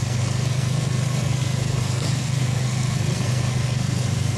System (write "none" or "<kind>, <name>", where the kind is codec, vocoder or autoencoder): codec, SNAC